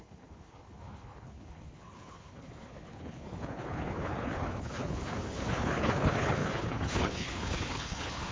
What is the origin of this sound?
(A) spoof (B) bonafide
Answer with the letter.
A